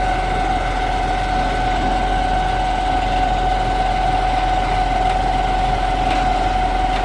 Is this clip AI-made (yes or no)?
no